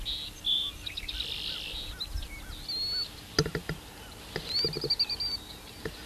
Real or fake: real